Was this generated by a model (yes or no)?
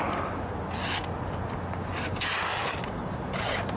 no